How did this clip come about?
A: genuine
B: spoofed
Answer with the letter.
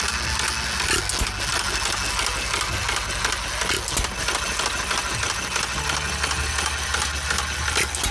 A